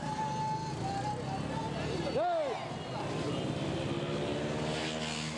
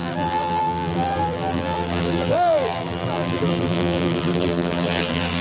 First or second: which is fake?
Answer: second